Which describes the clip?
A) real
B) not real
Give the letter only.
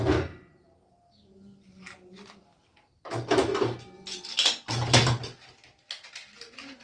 A